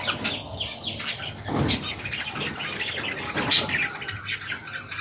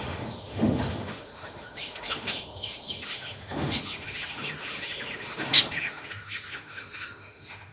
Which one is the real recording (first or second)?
first